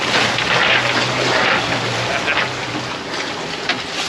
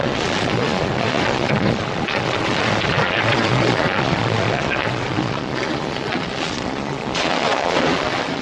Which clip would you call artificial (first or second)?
second